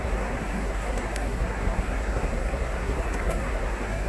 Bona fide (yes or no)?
no